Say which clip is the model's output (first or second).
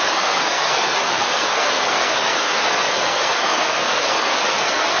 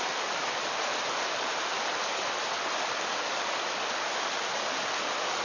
first